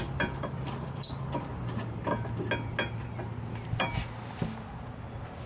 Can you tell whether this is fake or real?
real